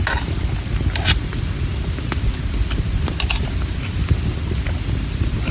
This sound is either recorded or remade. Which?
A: recorded